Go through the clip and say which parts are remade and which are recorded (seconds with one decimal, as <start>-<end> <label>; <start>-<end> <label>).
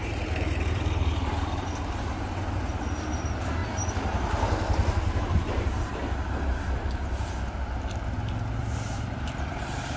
0.0-3.6 remade; 3.6-5.2 recorded; 5.2-6.0 remade; 6.0-8.6 recorded; 8.6-10.0 remade